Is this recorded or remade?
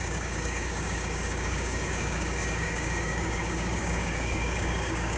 remade